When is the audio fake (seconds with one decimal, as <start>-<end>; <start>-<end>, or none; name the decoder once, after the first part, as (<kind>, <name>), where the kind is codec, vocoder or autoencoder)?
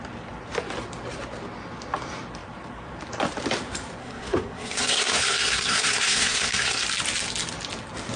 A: 4.0-6.8 (codec, SNAC)